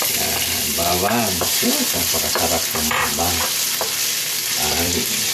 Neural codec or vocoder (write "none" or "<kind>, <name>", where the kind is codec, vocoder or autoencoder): vocoder, BigVGAN v2